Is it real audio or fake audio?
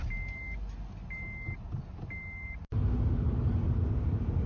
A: real